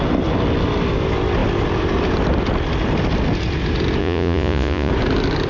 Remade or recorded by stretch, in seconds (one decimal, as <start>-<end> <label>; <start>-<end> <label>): 0.0-4.0 recorded; 4.0-4.9 remade; 4.9-5.5 recorded

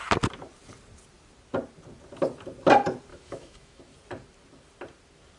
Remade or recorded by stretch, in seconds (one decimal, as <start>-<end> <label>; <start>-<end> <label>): 0.0-3.1 recorded; 3.1-3.8 remade; 3.8-5.4 recorded